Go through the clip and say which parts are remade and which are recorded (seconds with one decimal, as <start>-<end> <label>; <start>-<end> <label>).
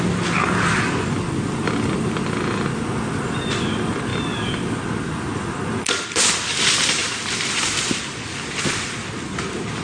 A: 0.0-9.8 recorded